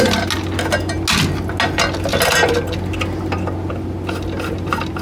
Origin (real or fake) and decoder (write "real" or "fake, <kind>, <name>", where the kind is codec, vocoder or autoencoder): real